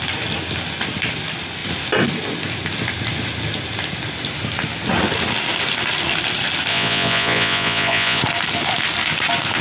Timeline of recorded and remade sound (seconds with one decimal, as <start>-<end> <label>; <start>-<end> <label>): 0.0-6.7 recorded; 6.7-8.2 remade; 8.2-9.6 recorded